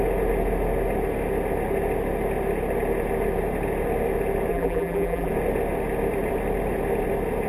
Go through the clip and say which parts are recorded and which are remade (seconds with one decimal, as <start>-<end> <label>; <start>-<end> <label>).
0.0-4.5 recorded; 4.5-5.3 remade; 5.3-7.5 recorded